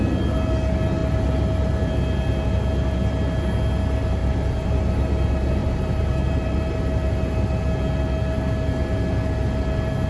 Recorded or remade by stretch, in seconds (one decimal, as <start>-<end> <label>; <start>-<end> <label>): 0.0-4.2 recorded; 4.2-4.9 remade; 4.9-5.6 recorded; 5.6-6.7 remade; 6.7-10.1 recorded